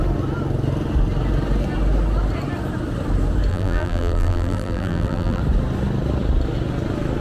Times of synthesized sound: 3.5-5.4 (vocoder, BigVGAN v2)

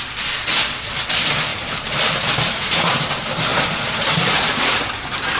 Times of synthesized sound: 1.5-3.1 (vocoder, BigVGAN v2); 3.5-4.8

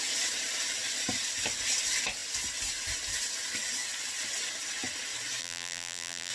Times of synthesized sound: 5.4-6.3 (vocoder, BigVGAN v2)

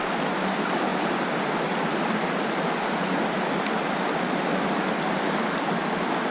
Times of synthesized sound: none

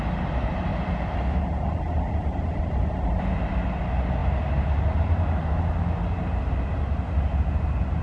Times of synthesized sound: none